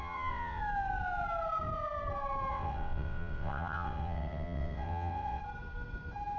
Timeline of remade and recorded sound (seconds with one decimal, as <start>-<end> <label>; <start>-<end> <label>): 0.0-0.6 remade; 0.6-2.5 recorded; 2.5-5.4 remade; 5.4-6.4 recorded